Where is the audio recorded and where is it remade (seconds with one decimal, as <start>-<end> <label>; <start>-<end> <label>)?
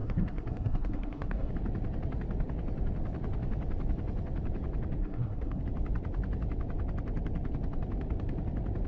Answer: 0.0-1.5 remade; 1.5-5.0 recorded; 5.0-5.6 remade; 5.6-8.9 recorded